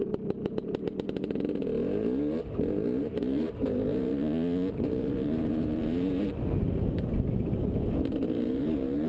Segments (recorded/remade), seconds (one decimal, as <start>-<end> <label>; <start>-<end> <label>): 0.0-4.1 remade; 4.1-4.7 recorded; 4.7-9.1 remade